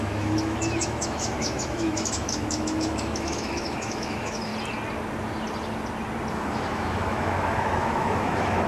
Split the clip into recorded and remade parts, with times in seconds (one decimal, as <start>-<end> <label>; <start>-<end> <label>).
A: 0.0-4.5 remade; 4.5-6.3 recorded; 6.3-8.7 remade